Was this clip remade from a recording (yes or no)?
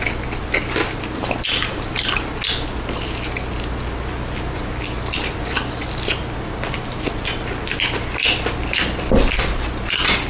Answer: no